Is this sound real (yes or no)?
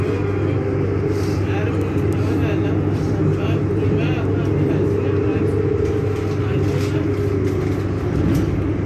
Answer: yes